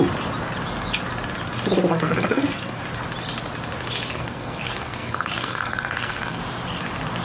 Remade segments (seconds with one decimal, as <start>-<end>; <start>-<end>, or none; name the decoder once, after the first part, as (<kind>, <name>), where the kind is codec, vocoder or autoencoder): 1.9-2.8 (codec, SNAC); 4.1-6.4

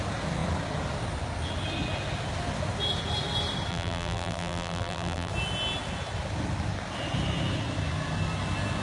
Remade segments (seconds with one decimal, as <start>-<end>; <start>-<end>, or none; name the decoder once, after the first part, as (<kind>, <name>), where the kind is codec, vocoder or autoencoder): 3.7-5.3 (vocoder, BigVGAN v2)

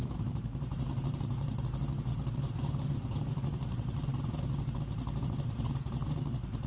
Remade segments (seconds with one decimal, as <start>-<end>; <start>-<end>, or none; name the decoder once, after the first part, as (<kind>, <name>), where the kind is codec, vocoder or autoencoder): 0.0-1.6 (vocoder, BigVGAN v2); 2.1-4.8

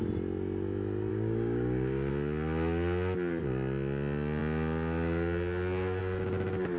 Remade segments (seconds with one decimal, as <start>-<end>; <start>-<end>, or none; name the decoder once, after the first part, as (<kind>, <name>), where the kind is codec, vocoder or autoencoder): 1.1-2.1 (codec, DAC)